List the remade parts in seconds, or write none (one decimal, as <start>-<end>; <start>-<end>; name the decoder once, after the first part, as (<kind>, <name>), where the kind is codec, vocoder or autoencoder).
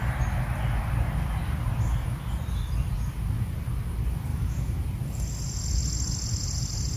4.3-4.8 (autoencoder, DAC-VAE)